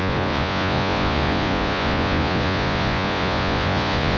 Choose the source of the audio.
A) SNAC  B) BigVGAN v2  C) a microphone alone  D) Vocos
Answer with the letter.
D